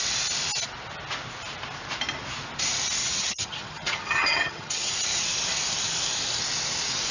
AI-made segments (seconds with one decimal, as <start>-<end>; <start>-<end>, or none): 3.0-4.9